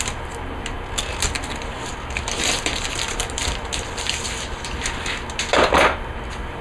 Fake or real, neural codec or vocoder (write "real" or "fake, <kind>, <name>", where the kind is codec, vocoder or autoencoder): fake, vocoder, BigVGAN v2